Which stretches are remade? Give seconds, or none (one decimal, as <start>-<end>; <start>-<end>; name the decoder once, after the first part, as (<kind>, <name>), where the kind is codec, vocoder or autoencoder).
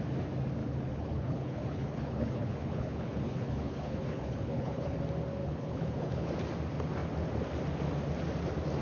0.6-5.0 (codec, HILCodec); 5.4-6.3